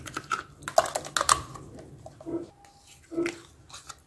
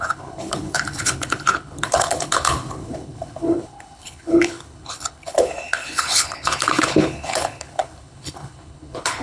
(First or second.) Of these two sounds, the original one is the first